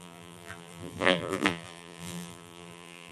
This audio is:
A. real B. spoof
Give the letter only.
B